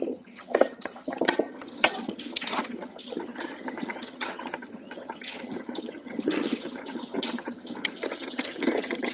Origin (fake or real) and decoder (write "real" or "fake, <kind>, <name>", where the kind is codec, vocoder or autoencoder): fake, vocoder, HiFi-GAN